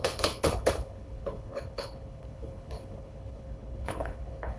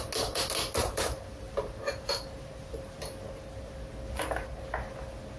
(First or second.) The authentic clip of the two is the second